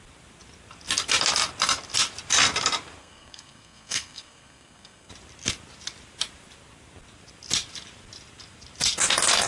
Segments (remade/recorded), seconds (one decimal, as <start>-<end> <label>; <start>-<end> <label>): 0.0-3.0 recorded; 3.0-5.1 remade; 5.1-9.5 recorded